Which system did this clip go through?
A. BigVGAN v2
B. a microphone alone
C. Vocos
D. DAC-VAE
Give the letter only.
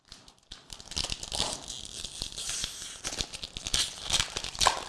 B